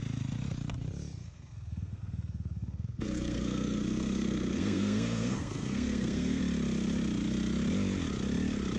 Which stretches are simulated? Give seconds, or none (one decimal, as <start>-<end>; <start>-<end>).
1.2-6.4